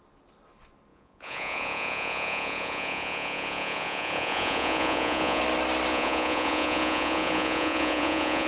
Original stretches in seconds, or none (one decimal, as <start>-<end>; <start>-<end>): 0.0-0.9; 5.4-5.9